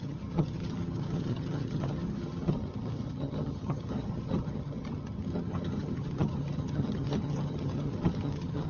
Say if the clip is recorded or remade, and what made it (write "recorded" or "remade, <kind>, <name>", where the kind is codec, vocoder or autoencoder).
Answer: remade, vocoder, HiFi-GAN